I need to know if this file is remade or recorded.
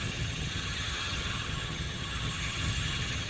remade